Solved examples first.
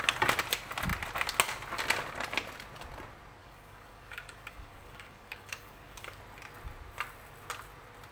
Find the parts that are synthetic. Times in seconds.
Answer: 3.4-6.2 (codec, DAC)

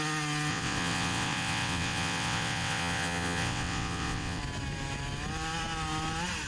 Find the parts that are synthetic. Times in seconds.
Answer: 0.5-4.4 (vocoder, WaveNeXt)

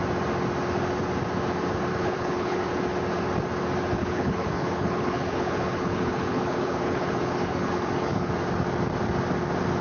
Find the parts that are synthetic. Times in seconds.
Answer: 1.9-2.7 (codec, HILCodec); 4.0-8.3

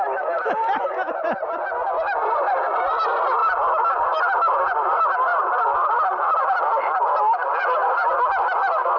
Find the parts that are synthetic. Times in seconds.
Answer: none

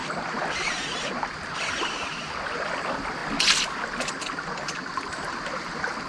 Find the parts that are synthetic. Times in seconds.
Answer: none

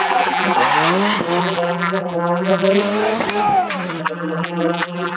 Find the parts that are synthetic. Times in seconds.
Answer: 0.0-0.6 (vocoder, BigVGAN v2); 1.4-2.8; 4.0-5.2